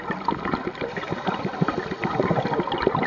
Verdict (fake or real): real